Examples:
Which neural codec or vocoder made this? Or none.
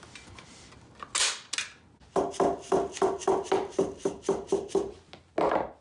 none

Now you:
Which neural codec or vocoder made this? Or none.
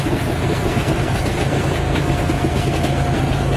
codec, SNAC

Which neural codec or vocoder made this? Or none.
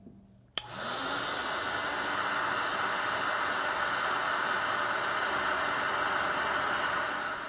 none